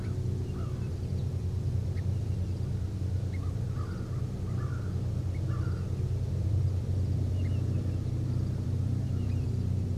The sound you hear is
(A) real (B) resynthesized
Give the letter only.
B